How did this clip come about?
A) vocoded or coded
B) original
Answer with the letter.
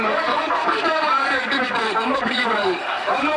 A